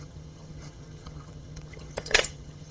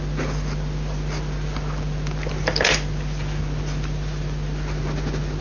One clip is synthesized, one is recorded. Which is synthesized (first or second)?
first